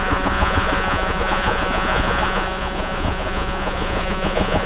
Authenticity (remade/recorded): remade